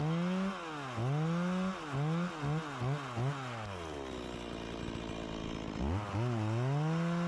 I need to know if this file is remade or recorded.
recorded